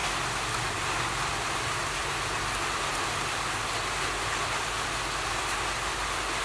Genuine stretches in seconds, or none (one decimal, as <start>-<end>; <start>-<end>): 0.0-6.4